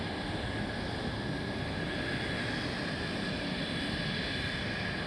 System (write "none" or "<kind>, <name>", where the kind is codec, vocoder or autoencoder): none